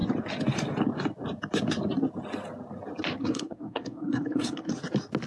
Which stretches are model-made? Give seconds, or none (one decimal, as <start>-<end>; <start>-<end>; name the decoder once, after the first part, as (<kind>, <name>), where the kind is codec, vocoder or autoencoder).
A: 3.2-4.7 (codec, SNAC)